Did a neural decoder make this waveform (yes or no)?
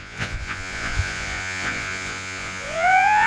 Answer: yes